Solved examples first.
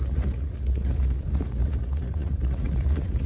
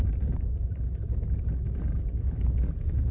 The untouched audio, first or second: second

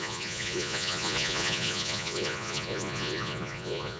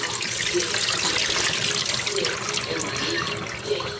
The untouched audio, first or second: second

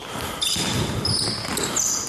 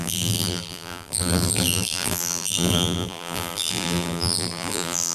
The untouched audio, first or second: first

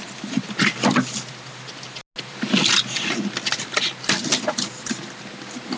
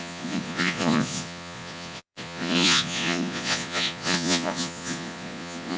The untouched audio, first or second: first